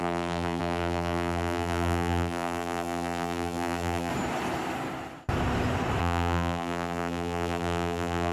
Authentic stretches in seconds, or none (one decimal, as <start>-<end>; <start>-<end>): 4.1-6.0